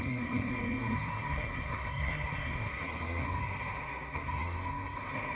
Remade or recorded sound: remade